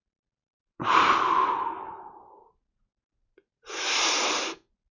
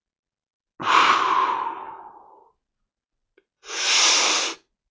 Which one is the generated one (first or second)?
first